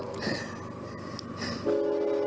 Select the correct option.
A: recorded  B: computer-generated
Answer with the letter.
A